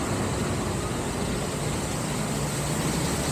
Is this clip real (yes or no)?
yes